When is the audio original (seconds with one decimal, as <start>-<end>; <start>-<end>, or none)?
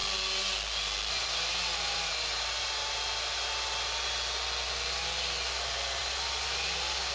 0.0-7.1